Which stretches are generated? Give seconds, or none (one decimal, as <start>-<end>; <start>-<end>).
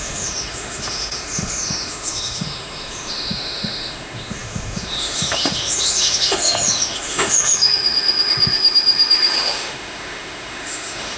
0.0-11.2